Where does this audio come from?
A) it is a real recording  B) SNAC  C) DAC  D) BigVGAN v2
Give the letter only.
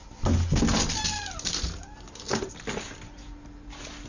A